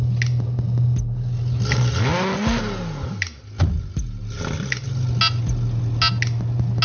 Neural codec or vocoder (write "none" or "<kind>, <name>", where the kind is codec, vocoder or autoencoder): none